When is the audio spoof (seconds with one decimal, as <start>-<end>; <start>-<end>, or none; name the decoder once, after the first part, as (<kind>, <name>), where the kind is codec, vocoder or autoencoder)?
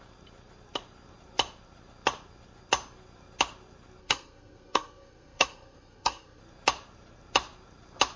4.0-6.4 (codec, SNAC)